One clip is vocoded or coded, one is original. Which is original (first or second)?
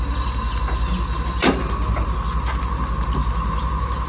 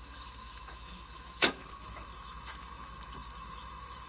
first